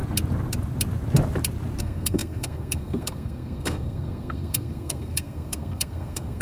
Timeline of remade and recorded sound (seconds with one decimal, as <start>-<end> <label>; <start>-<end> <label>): 0.0-1.8 recorded; 1.8-6.4 remade